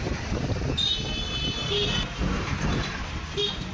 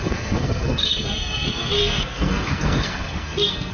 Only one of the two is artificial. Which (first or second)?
second